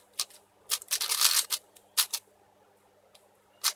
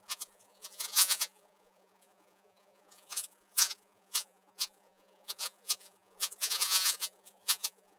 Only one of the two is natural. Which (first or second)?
first